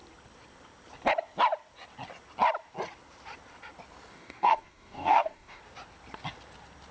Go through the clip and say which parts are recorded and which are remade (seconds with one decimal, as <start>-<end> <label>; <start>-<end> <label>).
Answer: 0.0-4.1 recorded; 4.1-5.6 remade; 5.6-6.9 recorded